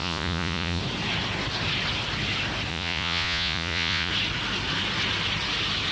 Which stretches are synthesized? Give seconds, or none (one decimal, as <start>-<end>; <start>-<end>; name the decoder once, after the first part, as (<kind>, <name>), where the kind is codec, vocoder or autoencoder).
0.0-0.8 (vocoder, Vocos); 2.7-4.1